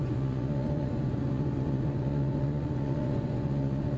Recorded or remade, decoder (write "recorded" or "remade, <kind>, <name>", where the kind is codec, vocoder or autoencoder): remade, vocoder, Vocos